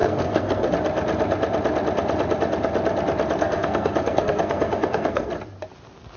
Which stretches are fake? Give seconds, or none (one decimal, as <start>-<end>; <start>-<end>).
0.0-0.7; 3.4-5.3